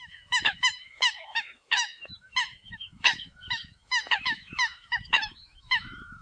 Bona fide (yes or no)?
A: no